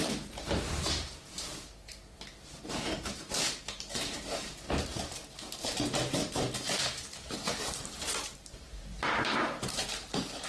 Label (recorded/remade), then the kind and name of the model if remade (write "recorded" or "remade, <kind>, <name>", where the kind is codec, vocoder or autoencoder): remade, vocoder, BigVGAN v2